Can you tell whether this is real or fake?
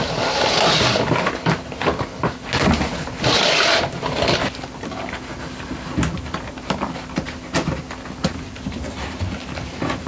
real